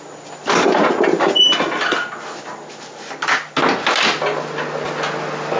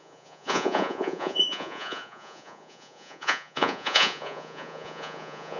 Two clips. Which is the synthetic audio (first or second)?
second